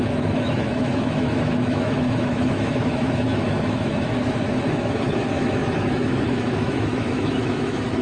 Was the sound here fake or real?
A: fake